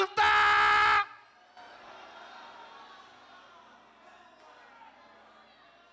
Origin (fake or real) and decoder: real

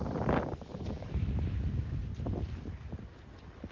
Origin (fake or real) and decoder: real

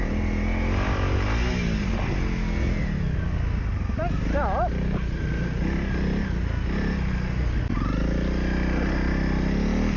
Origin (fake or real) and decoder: real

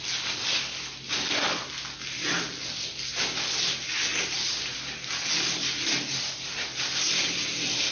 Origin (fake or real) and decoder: real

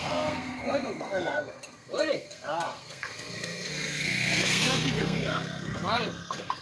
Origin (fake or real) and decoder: fake, codec, SNAC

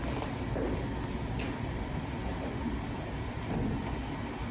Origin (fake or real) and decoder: real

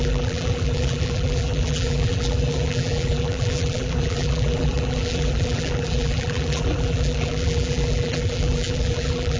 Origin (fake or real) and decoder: fake, vocoder, BigVGAN v2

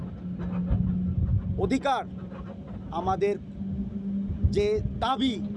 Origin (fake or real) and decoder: real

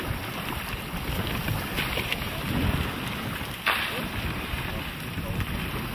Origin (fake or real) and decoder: real